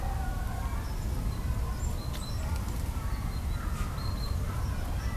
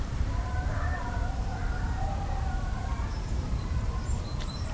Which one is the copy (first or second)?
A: second